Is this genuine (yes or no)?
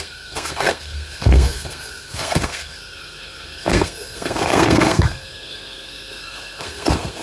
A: no